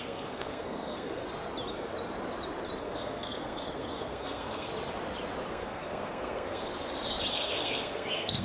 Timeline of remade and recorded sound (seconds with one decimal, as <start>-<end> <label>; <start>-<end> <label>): 0.0-1.2 remade; 1.2-2.8 recorded; 2.8-4.7 remade; 4.7-5.5 recorded; 5.5-6.7 remade; 6.7-7.3 recorded; 7.3-8.4 remade